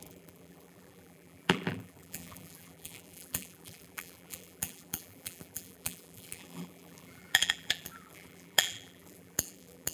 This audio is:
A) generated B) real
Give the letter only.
A